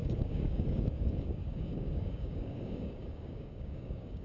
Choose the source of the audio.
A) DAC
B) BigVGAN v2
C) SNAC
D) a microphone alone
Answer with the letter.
A